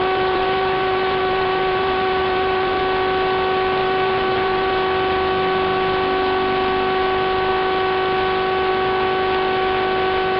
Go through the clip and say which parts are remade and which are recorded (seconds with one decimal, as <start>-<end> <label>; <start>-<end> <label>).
0.0-2.8 remade; 2.8-3.8 recorded; 3.8-4.7 remade; 4.7-10.4 recorded